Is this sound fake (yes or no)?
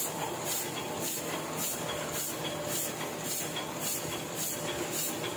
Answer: no